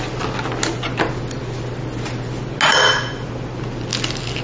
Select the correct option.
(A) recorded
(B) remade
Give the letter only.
A